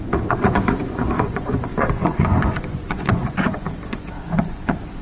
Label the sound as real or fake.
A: fake